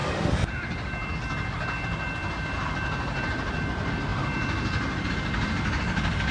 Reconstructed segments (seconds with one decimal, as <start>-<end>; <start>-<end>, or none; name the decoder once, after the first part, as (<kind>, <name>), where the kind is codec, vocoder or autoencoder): none